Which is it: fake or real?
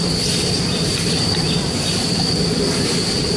real